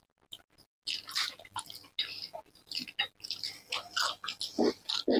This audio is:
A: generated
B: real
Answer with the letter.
B